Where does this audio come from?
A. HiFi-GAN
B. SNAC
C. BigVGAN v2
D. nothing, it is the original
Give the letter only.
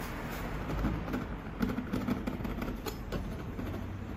D